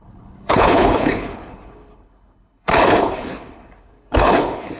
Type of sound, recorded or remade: remade